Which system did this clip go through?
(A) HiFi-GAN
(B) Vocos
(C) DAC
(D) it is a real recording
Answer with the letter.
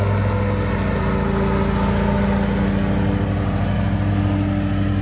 D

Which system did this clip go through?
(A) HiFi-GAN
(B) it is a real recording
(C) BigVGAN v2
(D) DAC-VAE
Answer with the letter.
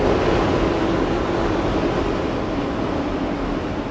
B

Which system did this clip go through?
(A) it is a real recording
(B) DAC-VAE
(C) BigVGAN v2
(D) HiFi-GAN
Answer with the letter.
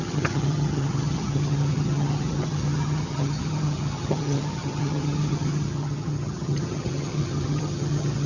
D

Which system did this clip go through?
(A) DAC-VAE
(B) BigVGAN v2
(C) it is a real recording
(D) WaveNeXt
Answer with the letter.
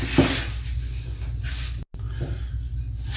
C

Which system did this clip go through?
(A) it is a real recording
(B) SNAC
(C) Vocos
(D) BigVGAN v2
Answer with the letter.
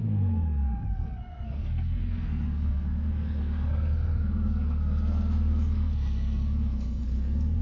B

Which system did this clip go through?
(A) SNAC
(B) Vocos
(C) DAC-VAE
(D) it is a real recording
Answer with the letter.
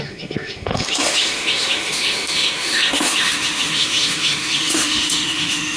C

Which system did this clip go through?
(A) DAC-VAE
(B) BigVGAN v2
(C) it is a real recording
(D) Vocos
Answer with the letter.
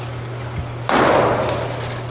C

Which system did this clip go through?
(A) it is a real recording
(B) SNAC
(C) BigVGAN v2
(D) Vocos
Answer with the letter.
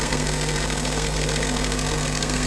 B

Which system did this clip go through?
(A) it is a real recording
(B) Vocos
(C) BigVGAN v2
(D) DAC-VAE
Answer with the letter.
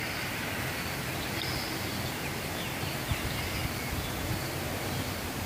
A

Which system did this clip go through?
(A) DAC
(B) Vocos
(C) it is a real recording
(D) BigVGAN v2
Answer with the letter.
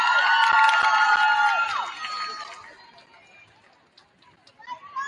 C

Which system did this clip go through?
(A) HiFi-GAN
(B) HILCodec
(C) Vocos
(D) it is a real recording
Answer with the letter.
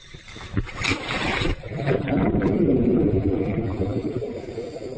D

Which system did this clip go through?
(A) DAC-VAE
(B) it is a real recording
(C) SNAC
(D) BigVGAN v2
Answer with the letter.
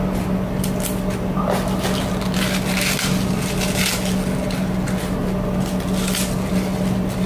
B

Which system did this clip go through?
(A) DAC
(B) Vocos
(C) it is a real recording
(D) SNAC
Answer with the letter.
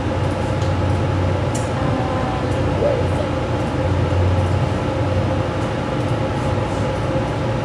C